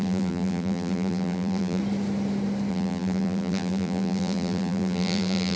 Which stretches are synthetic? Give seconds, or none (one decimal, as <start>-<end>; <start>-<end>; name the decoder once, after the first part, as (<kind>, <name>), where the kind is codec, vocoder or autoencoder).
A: 0.0-1.8 (vocoder, BigVGAN v2); 2.7-5.6